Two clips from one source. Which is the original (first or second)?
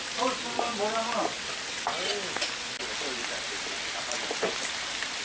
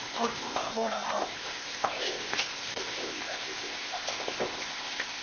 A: first